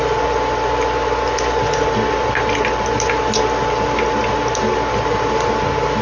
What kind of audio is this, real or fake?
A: real